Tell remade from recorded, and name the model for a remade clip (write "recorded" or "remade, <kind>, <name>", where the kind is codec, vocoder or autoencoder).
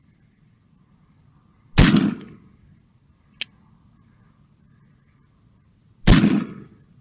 recorded